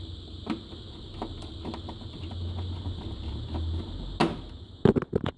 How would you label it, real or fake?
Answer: real